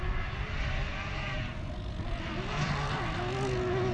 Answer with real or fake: real